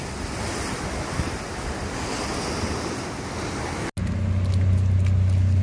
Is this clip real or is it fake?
real